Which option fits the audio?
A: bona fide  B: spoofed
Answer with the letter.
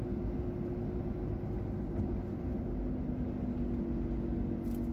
A